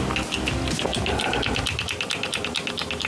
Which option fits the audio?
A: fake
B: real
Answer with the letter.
B